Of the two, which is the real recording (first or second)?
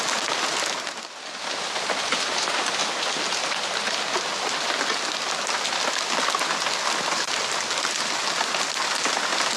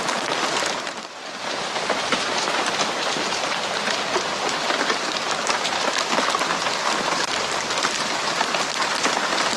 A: first